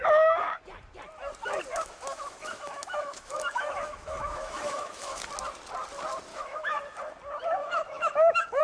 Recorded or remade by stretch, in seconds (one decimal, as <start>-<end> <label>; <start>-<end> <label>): 0.0-1.7 recorded; 1.7-5.2 remade; 5.2-6.3 recorded; 6.3-6.8 remade; 6.8-7.6 recorded; 7.6-8.6 remade